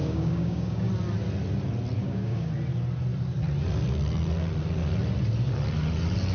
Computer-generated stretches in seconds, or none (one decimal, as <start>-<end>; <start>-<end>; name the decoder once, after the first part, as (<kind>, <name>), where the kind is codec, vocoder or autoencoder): 0.0-0.9 (codec, DAC); 2.0-2.5